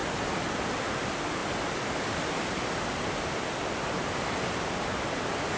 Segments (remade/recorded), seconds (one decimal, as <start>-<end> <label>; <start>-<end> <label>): 0.0-5.6 recorded

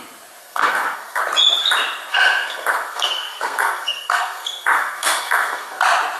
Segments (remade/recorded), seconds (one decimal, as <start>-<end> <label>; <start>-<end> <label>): 0.0-0.4 recorded; 0.4-1.2 remade; 1.2-2.1 recorded; 2.1-5.8 remade; 5.8-6.2 recorded

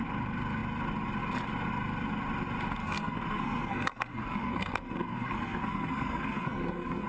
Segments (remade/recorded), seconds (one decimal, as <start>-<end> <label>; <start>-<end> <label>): 0.0-2.8 recorded; 2.8-7.1 remade

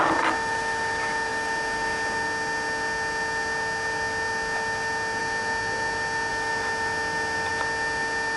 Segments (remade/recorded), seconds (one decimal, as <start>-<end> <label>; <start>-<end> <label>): 0.0-8.4 recorded

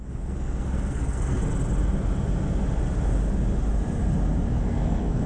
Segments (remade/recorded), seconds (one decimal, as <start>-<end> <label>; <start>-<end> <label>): 0.0-1.4 remade; 1.4-4.6 recorded; 4.6-5.3 remade